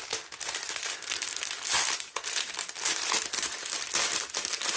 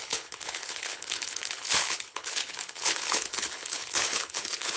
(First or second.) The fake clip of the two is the second